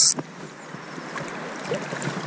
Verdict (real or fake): real